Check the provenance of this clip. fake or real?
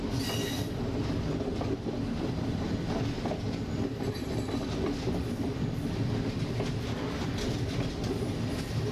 real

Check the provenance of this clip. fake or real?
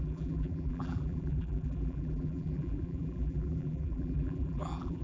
fake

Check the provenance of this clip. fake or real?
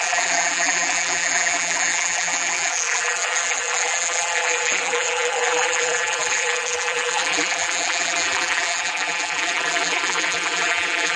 fake